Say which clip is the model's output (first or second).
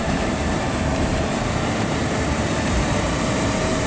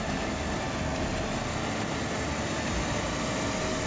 first